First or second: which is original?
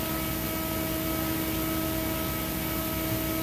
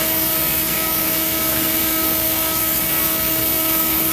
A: first